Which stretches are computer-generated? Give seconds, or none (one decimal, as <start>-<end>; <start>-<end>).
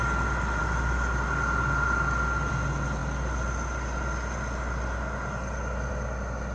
none